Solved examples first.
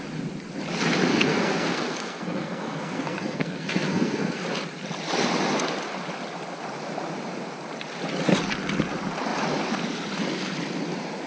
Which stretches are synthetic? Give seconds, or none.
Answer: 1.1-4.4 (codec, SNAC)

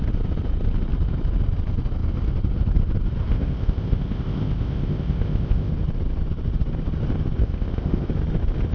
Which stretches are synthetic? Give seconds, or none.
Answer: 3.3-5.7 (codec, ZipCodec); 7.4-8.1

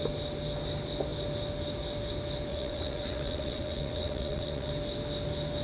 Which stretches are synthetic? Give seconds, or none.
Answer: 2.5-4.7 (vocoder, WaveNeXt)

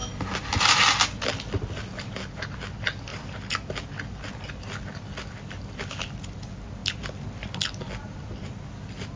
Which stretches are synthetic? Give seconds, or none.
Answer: none